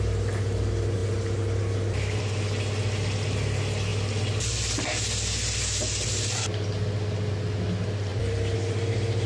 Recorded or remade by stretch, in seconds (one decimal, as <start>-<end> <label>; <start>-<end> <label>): 0.0-9.3 recorded